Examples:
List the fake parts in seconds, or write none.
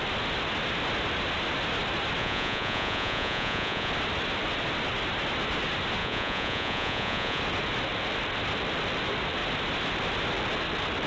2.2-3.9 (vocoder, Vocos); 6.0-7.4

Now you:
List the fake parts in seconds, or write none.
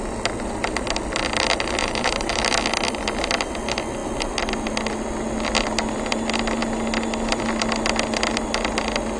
1.8-2.4 (vocoder, BigVGAN v2)